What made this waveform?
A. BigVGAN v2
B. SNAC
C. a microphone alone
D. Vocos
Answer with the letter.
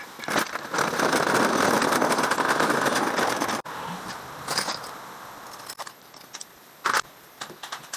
A